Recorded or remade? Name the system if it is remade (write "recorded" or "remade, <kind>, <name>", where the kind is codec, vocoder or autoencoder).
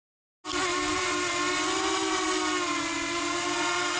recorded